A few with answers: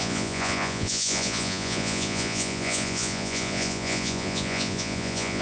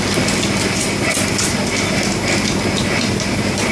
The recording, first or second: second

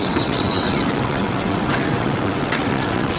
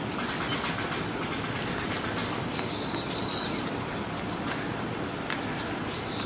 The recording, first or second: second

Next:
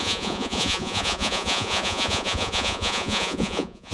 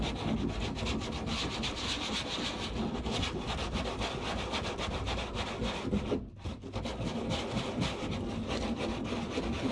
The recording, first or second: second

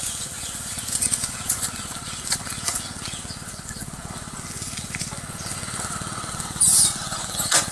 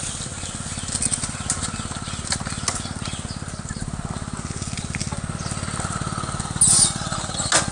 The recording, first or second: second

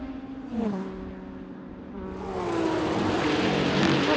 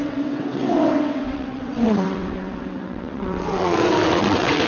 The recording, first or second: first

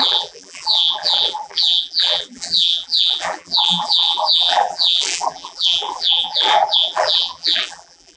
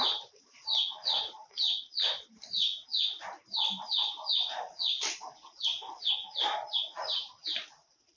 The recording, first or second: second